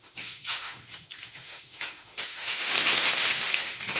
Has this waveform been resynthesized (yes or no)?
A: yes